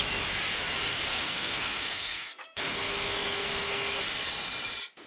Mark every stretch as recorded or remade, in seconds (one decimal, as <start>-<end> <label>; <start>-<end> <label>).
0.0-0.9 recorded; 0.9-4.0 remade; 4.0-5.1 recorded